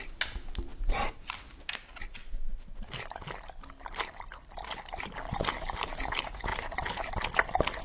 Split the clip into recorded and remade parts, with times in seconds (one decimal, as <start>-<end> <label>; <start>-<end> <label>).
0.0-7.8 recorded